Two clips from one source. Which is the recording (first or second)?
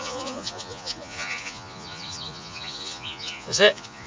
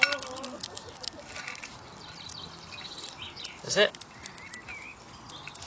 second